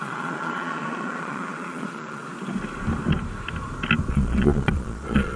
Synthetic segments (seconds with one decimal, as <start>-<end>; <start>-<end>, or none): 0.0-2.2; 4.1-5.4